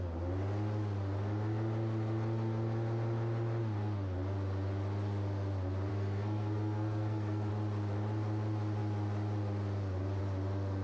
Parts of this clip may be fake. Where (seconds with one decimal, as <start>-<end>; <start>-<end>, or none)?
5.9-7.5